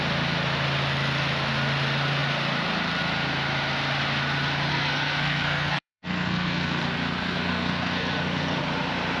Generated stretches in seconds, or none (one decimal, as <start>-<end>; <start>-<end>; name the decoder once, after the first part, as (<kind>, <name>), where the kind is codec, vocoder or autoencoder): 4.7-8.6 (codec, SNAC)